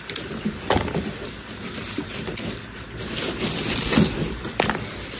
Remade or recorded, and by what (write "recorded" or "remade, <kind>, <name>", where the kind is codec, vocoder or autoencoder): recorded